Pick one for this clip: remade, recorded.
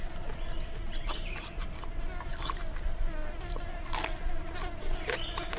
remade